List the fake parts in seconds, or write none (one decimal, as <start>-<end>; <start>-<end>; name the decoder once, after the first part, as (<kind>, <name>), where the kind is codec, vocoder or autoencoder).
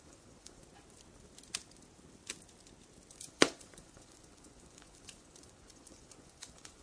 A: 0.0-0.6 (vocoder, Vocos); 3.1-6.8